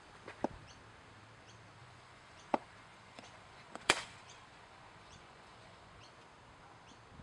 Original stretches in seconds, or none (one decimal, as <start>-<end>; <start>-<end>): 0.0-1.8; 6.1-7.2